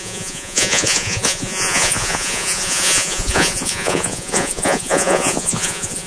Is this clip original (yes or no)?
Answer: no